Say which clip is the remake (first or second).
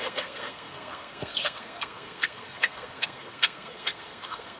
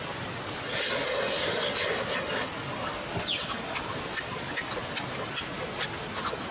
first